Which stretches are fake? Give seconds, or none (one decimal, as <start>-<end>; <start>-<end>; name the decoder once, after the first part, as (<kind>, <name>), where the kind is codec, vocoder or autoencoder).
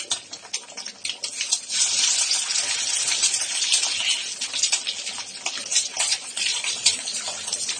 6.0-7.2 (vocoder, Vocos)